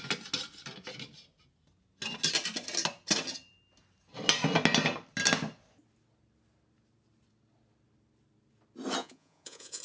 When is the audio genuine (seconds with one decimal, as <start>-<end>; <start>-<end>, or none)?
0.0-9.0